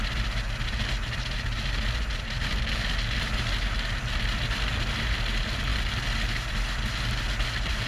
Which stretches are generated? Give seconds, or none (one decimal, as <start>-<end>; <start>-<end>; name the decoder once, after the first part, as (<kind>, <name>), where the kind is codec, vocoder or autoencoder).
none